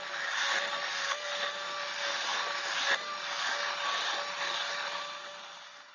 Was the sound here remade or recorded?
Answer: recorded